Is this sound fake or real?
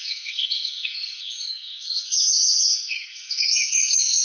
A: fake